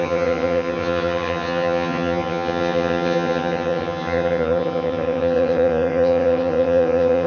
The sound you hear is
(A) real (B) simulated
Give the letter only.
B